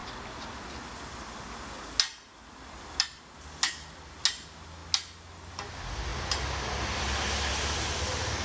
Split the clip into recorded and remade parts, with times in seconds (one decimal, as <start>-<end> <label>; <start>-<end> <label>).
0.0-8.4 recorded

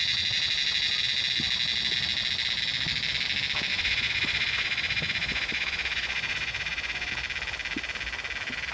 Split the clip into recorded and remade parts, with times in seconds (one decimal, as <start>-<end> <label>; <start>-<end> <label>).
0.0-3.7 recorded; 3.7-7.1 remade; 7.1-8.7 recorded

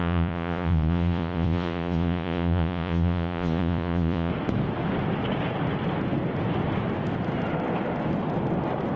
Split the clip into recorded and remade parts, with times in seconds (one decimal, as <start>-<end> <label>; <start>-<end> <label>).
0.0-4.3 remade; 4.3-9.0 recorded

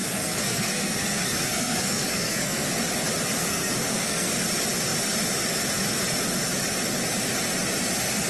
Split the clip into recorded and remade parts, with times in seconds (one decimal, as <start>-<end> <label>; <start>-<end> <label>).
0.0-2.7 remade; 2.7-3.4 recorded; 3.4-4.3 remade; 4.3-8.3 recorded

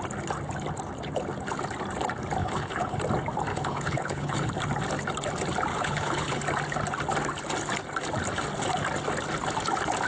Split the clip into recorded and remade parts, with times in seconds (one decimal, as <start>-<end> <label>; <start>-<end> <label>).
0.0-2.4 recorded; 2.4-3.0 remade; 3.0-3.5 recorded; 3.5-4.5 remade; 4.5-5.7 recorded; 5.7-6.4 remade; 6.4-10.1 recorded

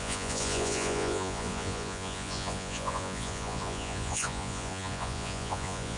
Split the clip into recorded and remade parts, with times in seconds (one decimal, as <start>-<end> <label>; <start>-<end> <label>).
0.0-6.0 remade